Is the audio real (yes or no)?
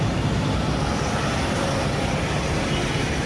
yes